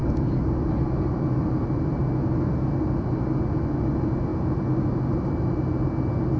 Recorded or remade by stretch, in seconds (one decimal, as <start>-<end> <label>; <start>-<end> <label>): 0.0-6.4 recorded